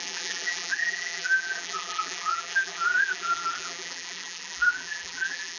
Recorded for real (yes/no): no